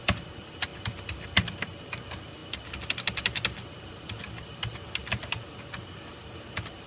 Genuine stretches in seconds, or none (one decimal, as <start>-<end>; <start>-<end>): 0.0-6.9